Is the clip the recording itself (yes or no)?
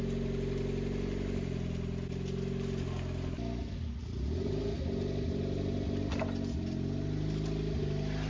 yes